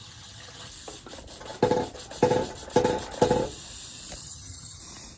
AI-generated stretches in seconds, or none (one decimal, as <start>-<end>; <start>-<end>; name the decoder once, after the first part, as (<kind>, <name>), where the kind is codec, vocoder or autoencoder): 0.0-0.7 (vocoder, HiFi-GAN); 4.2-4.8